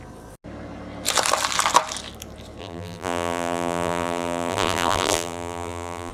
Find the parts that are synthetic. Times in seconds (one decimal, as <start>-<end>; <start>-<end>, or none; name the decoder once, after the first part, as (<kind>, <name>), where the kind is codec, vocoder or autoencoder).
2.6-6.1 (vocoder, BigVGAN v2)